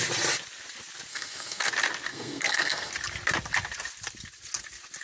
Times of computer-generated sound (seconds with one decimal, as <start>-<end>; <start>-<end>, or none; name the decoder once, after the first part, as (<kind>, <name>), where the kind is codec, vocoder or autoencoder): 1.1-1.7 (codec, SNAC); 2.1-2.9